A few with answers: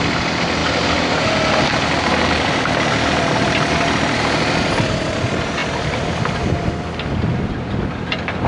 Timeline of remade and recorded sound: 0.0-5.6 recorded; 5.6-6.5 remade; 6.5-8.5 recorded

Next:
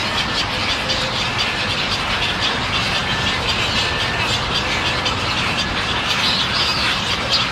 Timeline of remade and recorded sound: 0.0-0.6 recorded; 0.6-1.1 remade; 1.1-7.5 recorded

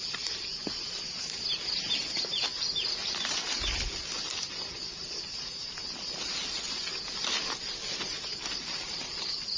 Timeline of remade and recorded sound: 0.0-9.6 recorded